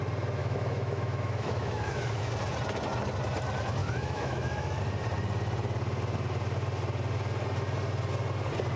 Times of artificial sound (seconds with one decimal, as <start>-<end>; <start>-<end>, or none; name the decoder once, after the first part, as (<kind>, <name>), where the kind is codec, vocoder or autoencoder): 0.4-2.3 (autoencoder, DAC-VAE); 3.8-4.8

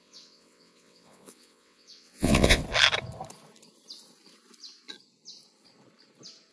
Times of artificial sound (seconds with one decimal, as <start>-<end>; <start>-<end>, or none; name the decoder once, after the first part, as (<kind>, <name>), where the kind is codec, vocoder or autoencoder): 0.0-2.6 (vocoder, WaveNeXt)